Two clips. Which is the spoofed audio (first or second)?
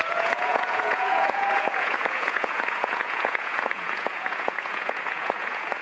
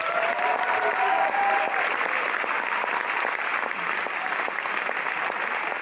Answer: first